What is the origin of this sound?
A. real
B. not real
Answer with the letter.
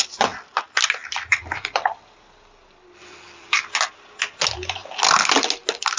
A